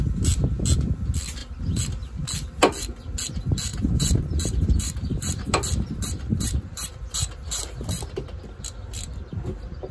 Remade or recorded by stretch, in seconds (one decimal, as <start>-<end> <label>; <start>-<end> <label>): 0.0-3.7 recorded; 3.7-8.6 remade; 8.6-9.9 recorded